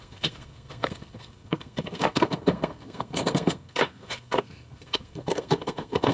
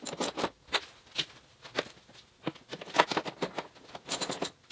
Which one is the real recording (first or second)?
second